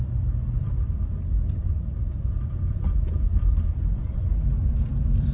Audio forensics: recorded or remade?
remade